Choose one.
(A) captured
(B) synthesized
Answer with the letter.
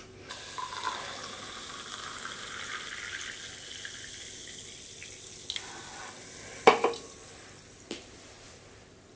A